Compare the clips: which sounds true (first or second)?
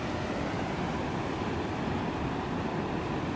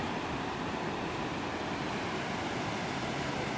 first